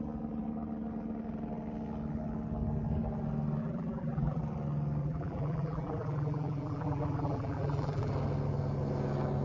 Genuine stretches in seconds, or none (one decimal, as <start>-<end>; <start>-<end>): 0.0-3.6; 4.4-5.0; 8.1-9.4